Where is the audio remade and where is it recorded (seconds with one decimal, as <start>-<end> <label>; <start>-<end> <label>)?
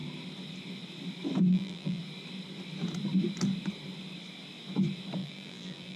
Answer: 0.0-1.5 recorded; 1.5-2.0 remade; 2.0-5.2 recorded; 5.2-6.0 remade